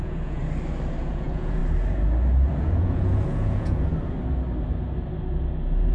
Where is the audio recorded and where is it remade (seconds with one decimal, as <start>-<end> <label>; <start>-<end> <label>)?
0.0-0.4 remade; 0.4-1.0 recorded; 1.0-1.6 remade; 1.6-2.6 recorded; 2.6-3.9 remade; 3.9-5.9 recorded